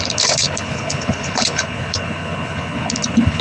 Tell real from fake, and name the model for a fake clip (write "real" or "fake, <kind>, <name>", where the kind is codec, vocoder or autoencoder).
fake, codec, HILCodec